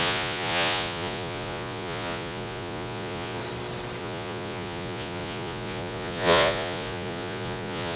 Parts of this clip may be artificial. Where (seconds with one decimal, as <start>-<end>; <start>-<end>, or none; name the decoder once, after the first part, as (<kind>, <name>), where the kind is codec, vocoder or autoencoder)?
0.0-3.4 (vocoder, Vocos); 4.0-8.0